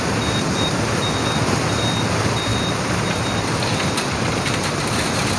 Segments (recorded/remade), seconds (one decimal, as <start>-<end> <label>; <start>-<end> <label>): 0.0-2.5 recorded; 2.5-4.7 remade; 4.7-5.4 recorded